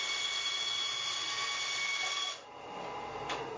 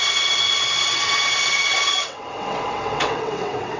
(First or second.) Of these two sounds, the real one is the first